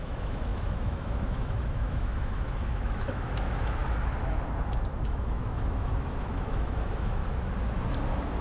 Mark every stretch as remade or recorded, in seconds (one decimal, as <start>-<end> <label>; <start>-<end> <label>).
0.0-3.8 remade; 3.8-5.0 recorded; 5.0-7.2 remade; 7.2-8.4 recorded